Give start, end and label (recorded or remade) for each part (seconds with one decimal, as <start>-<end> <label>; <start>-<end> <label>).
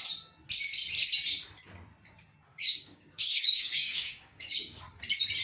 0.0-2.5 recorded; 2.5-4.8 remade; 4.8-5.4 recorded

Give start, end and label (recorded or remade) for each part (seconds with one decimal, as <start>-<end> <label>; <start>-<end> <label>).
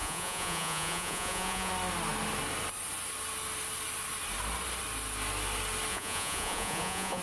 0.0-1.7 remade; 1.7-5.9 recorded; 5.9-7.2 remade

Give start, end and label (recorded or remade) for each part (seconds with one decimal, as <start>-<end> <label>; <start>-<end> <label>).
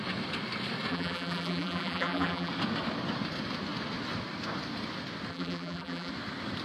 0.0-0.9 recorded; 0.9-2.5 remade; 2.5-5.3 recorded; 5.3-6.1 remade; 6.1-6.6 recorded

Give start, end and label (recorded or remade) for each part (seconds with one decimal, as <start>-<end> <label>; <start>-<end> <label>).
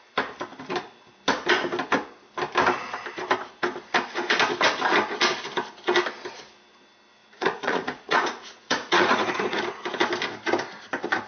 0.0-7.2 recorded; 7.2-9.6 remade; 9.6-11.3 recorded